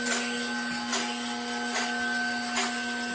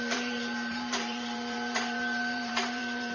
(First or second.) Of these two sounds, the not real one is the second